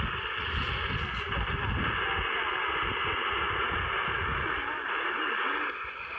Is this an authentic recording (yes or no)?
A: yes